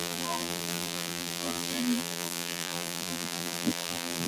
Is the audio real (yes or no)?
no